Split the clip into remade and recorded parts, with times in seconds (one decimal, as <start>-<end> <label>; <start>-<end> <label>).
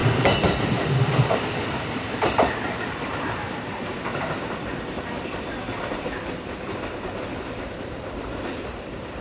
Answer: 0.0-0.6 recorded; 0.6-9.2 remade